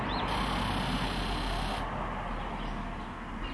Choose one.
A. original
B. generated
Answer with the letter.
A